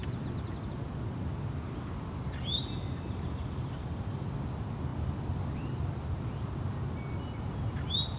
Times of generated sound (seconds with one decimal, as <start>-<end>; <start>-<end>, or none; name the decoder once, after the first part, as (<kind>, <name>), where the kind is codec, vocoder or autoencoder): none